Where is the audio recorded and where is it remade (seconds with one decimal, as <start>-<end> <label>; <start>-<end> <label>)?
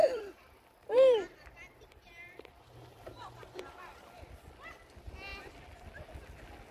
0.0-3.8 remade; 3.8-6.7 recorded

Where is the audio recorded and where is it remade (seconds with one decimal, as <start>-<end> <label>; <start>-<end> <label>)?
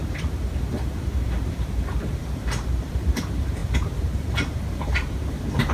0.0-5.7 remade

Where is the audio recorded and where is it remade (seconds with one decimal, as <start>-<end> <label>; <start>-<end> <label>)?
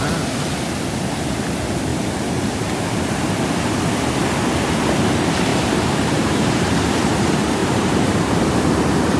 0.0-5.5 recorded; 5.5-6.7 remade; 6.7-7.6 recorded; 7.6-8.6 remade; 8.6-9.2 recorded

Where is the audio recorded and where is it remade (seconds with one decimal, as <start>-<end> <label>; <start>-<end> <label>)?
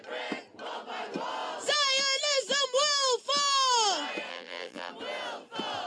0.0-4.3 recorded; 4.3-4.9 remade; 4.9-5.9 recorded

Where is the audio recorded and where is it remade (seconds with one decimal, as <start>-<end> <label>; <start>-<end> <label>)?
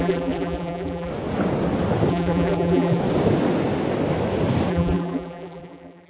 0.0-1.1 remade; 1.1-2.1 recorded; 2.1-3.0 remade; 3.0-4.7 recorded; 4.7-6.1 remade